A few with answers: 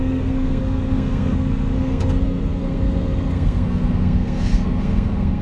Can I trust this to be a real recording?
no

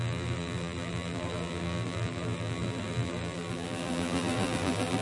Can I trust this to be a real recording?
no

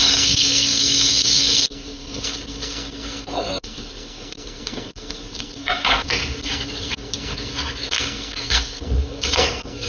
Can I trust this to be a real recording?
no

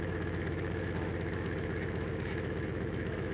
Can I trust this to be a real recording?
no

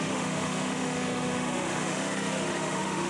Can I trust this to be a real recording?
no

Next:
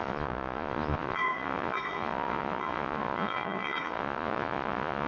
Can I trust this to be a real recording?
no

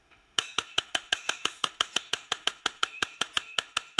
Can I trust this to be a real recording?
no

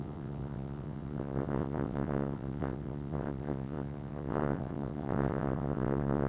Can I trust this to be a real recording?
no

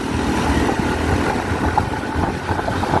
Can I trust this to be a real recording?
yes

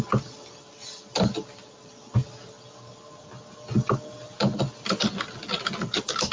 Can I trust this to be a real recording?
yes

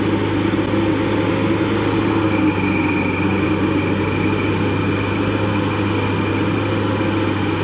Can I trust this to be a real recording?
yes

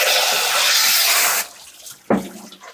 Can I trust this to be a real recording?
yes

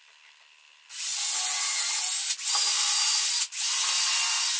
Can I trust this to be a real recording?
yes